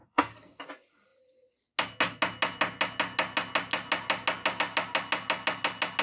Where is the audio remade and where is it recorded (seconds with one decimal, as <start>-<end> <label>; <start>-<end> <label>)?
0.0-0.6 remade; 0.6-6.0 recorded